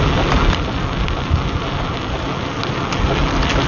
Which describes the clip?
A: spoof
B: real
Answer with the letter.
B